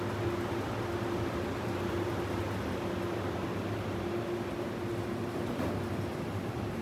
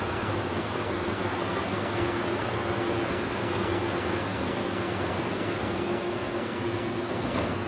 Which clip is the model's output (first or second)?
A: second